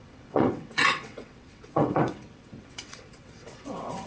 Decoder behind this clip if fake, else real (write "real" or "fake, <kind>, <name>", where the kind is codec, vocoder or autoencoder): fake, vocoder, WaveNeXt